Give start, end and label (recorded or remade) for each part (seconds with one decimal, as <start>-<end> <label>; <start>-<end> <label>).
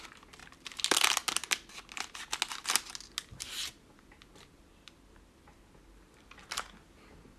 0.0-7.4 recorded